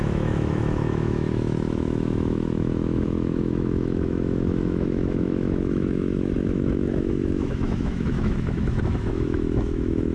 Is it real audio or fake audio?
fake